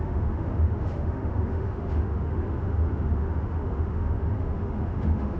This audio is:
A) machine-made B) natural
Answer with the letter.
A